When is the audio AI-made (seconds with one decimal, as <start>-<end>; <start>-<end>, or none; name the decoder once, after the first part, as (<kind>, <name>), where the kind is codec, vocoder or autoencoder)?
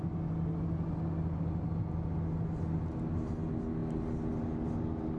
none